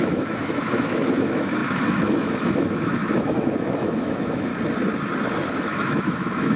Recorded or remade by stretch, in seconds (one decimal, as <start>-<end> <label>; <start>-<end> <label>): 0.0-4.5 remade; 4.5-5.5 recorded; 5.5-6.6 remade